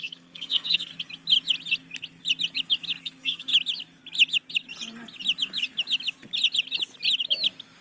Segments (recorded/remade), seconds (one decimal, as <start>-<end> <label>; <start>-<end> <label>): 0.0-0.9 remade; 0.9-3.0 recorded; 3.0-3.5 remade; 3.5-7.8 recorded